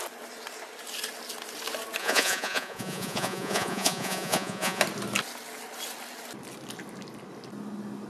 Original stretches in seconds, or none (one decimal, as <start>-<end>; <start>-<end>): 0.0-2.0; 4.8-8.1